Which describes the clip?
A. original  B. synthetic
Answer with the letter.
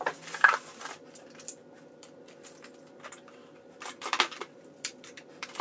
B